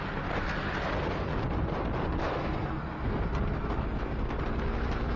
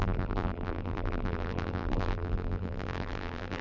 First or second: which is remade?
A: second